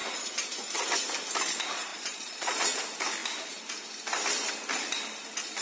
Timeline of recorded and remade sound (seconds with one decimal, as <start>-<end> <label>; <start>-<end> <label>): 0.0-1.9 recorded; 1.9-2.8 remade; 2.8-5.6 recorded